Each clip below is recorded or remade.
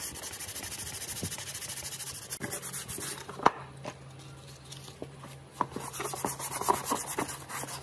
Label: recorded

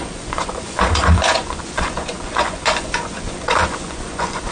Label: remade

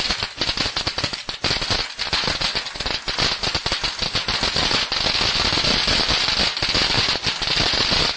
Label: recorded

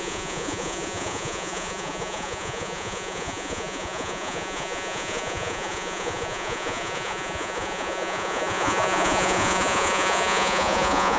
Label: remade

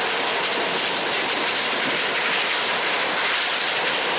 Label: recorded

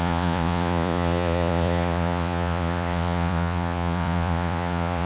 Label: remade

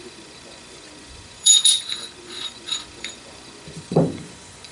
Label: remade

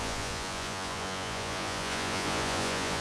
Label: remade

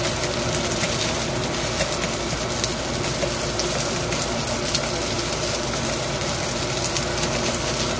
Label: recorded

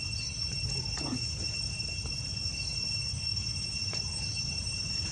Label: remade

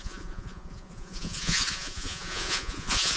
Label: remade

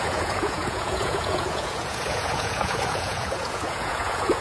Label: remade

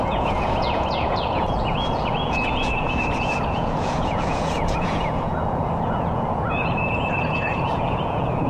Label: remade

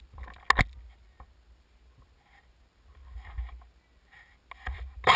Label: recorded